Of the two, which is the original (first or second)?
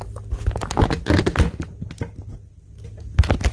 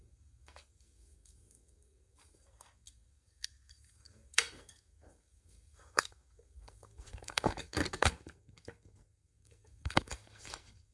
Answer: first